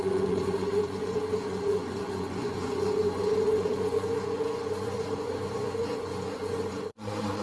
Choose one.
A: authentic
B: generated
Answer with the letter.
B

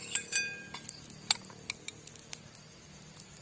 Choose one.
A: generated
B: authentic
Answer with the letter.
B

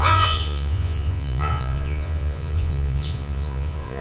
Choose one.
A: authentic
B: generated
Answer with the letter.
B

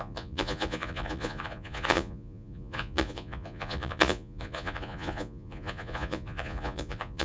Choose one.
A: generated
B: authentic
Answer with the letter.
A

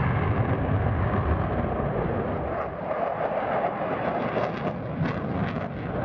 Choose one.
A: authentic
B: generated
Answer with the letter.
A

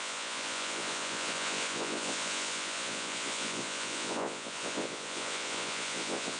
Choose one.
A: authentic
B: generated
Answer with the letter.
B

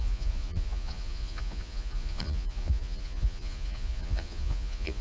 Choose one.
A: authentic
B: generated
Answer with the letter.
B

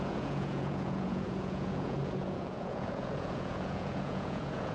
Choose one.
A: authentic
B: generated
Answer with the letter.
B